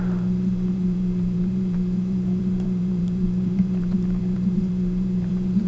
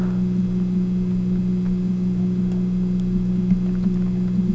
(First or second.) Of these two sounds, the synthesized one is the first